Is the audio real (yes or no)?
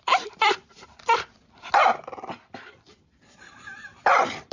no